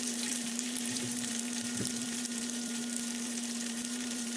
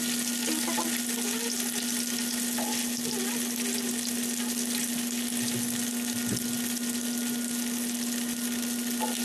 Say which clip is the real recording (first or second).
second